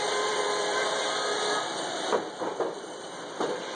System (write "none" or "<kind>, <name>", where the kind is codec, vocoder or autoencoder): vocoder, BigVGAN v2